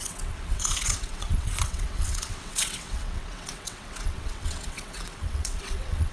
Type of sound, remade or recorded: remade